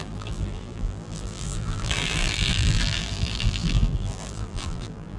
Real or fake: fake